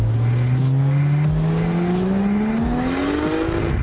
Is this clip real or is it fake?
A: real